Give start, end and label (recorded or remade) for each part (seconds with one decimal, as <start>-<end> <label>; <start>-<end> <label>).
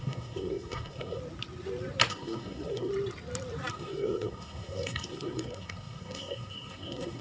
0.0-1.2 remade; 1.2-2.1 recorded; 2.1-2.9 remade; 2.9-3.7 recorded; 3.7-7.2 remade